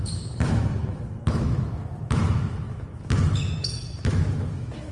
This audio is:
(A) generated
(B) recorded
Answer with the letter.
A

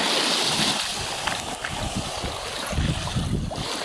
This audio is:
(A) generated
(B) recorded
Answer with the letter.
B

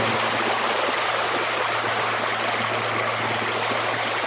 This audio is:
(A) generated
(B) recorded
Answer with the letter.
B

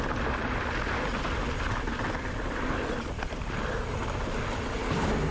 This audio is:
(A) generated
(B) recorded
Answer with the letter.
B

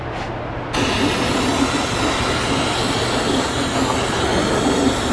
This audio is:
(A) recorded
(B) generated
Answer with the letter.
A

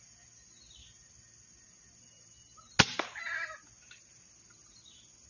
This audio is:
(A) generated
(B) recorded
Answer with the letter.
B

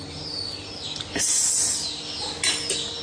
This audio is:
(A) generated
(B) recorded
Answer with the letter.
B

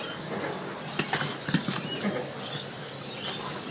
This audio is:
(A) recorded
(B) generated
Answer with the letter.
A